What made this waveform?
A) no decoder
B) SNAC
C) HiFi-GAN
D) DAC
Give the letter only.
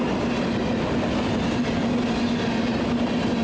A